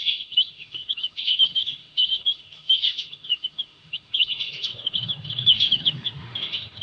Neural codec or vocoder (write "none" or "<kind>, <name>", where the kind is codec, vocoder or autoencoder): autoencoder, DAC-VAE